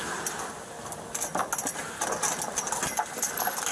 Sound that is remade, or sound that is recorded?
recorded